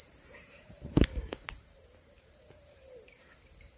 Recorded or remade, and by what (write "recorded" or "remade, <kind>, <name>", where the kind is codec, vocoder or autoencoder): remade, vocoder, BigVGAN v2